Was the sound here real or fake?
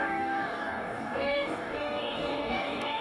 fake